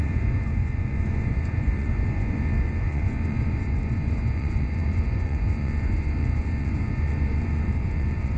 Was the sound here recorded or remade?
remade